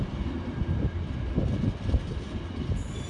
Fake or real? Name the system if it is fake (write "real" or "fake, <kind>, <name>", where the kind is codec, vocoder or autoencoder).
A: real